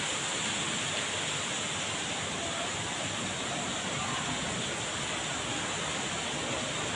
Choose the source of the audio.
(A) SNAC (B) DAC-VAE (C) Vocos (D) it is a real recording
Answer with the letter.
D